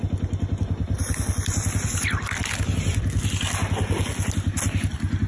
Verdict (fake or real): real